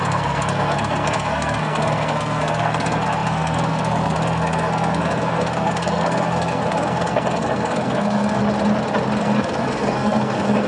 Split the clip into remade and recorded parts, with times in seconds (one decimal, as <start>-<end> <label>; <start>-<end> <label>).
0.0-8.4 remade; 8.4-9.2 recorded; 9.2-10.7 remade